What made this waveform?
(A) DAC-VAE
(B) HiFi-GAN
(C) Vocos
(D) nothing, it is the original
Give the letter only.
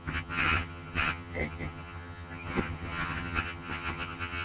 B